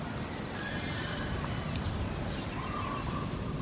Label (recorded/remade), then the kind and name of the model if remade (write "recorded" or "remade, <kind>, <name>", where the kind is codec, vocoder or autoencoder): recorded